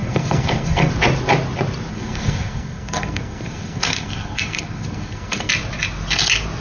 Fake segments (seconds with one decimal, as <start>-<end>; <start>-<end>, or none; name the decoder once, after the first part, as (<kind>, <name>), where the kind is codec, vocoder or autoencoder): 0.0-0.9 (codec, SNAC); 1.9-5.5